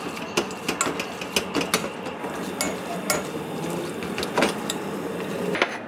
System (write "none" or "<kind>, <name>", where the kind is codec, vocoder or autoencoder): none